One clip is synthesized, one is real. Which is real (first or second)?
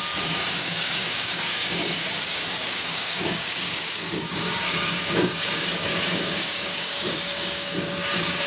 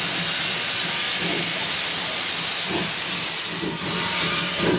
second